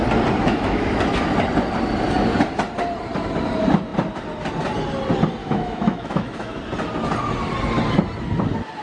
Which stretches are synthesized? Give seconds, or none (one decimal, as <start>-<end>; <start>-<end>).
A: 0.4-1.0; 5.4-6.6